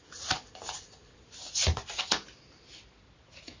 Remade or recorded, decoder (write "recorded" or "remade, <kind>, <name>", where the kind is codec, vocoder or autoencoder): recorded